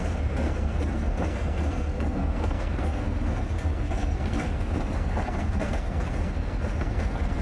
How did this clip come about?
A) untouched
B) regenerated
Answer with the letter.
B